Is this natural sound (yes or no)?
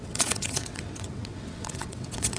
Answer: no